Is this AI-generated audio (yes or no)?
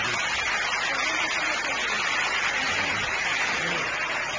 no